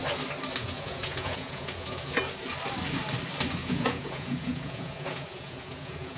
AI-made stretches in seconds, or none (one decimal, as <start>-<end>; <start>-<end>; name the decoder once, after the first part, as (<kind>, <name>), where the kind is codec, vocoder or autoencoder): 0.6-2.2 (vocoder, Vocos); 3.6-6.2